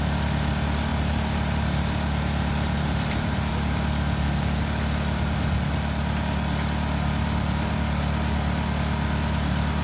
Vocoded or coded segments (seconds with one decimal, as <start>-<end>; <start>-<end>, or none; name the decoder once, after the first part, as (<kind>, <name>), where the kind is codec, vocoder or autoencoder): 0.9-3.5 (vocoder, BigVGAN v2)